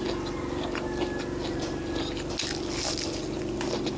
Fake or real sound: real